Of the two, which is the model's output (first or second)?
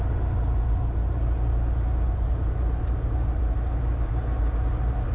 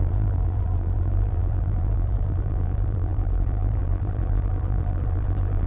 second